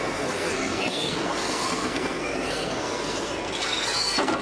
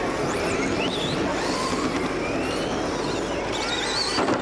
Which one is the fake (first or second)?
first